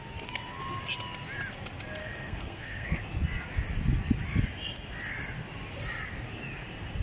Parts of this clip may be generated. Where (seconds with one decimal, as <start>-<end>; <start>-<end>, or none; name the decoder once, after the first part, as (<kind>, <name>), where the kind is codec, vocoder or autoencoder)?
2.0-3.0 (codec, SNAC)